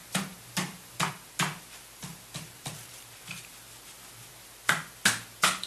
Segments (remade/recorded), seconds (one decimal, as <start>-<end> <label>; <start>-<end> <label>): 0.0-1.1 remade; 1.1-2.1 recorded; 2.1-3.5 remade; 3.5-5.7 recorded